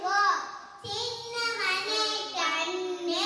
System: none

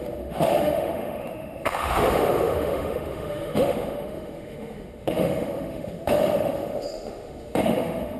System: autoencoder, DAC-VAE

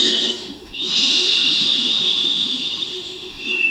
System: autoencoder, DAC-VAE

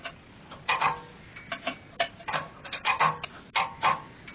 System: none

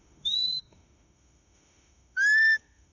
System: autoencoder, DAC-VAE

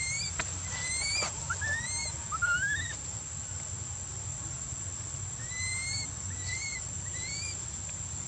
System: none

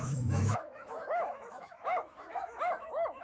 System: autoencoder, DAC-VAE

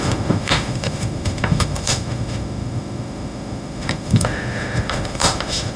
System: autoencoder, DAC-VAE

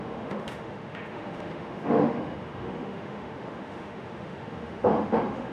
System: autoencoder, DAC-VAE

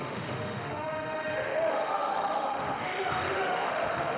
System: autoencoder, DAC-VAE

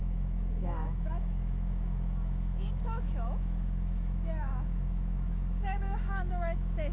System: autoencoder, DAC-VAE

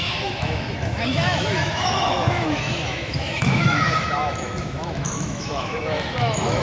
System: autoencoder, DAC-VAE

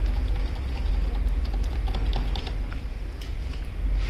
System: none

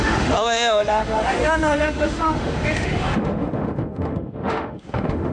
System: autoencoder, DAC-VAE